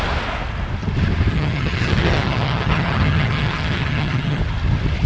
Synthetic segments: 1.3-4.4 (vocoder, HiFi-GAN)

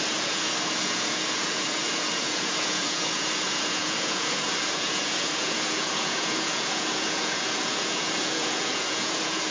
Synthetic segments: 0.0-9.5 (vocoder, Vocos)